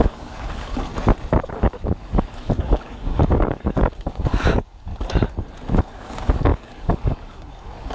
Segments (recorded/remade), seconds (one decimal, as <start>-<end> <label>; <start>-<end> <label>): 0.0-0.9 remade; 0.9-1.5 recorded; 1.5-4.9 remade; 4.9-5.8 recorded; 5.8-7.9 remade